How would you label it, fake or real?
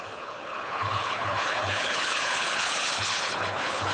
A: fake